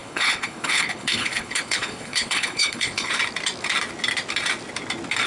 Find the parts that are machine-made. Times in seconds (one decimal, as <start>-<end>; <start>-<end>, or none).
0.0-3.1